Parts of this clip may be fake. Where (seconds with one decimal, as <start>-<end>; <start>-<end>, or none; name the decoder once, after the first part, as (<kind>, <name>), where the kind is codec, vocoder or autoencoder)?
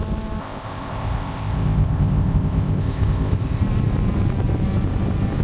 0.4-3.6 (codec, ZipCodec)